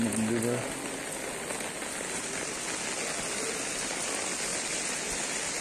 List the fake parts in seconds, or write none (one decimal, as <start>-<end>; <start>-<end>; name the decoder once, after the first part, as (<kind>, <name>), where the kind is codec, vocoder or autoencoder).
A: none